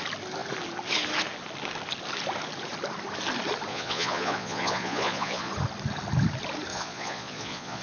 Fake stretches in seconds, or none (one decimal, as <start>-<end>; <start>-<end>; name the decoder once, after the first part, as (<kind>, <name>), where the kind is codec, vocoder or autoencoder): 3.7-5.5 (vocoder, Vocos); 6.7-7.8